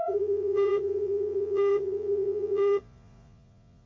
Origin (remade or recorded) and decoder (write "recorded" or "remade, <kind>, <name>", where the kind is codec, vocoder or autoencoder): remade, vocoder, Vocos